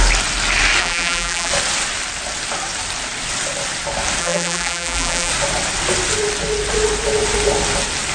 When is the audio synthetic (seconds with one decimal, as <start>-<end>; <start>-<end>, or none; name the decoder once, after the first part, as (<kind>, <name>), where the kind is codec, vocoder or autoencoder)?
0.8-1.5 (vocoder, BigVGAN v2); 4.2-5.3